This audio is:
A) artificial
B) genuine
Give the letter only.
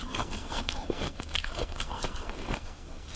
A